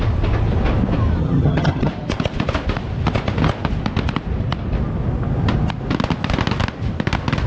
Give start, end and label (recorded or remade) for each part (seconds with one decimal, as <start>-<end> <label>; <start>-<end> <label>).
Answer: 0.0-1.2 recorded; 1.2-1.9 remade; 1.9-7.5 recorded